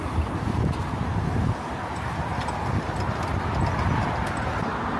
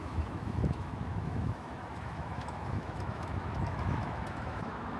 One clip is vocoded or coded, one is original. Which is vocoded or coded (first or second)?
second